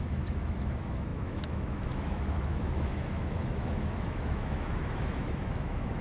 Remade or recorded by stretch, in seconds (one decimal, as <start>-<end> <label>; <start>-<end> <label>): 0.0-6.0 remade